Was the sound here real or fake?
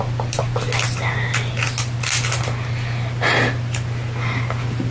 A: real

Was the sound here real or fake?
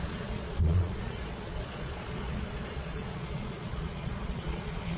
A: fake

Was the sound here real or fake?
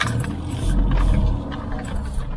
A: real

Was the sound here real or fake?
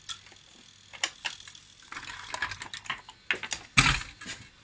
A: real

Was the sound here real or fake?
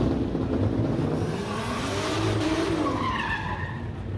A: real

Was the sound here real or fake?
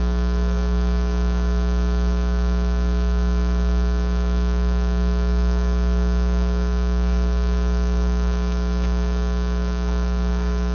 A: fake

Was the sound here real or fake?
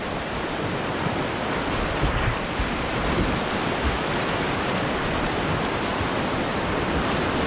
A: fake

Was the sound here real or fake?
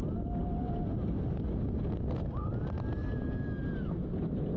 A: real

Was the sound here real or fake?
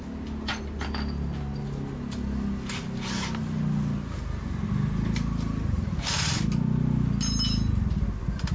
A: real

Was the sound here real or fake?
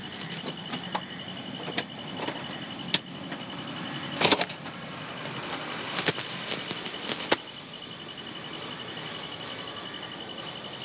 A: real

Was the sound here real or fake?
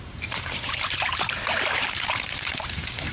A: fake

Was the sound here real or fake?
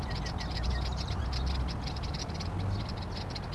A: real